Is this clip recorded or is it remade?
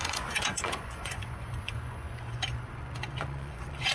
remade